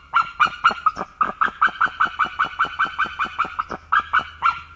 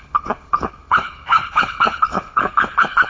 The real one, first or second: first